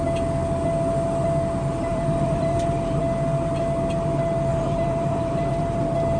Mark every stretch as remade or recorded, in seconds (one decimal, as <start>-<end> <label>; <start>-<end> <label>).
0.0-1.9 recorded; 1.9-3.0 remade; 3.0-4.5 recorded; 4.5-5.8 remade; 5.8-6.2 recorded